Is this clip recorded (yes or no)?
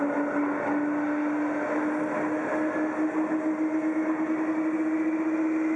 yes